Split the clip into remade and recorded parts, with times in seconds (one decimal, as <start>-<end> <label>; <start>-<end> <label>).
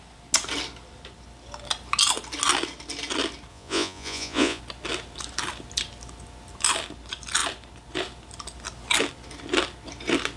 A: 0.0-3.5 recorded; 3.5-4.6 remade; 4.6-10.4 recorded